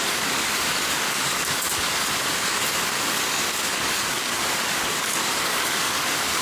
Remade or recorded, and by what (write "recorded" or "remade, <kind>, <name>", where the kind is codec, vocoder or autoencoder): remade, codec, DAC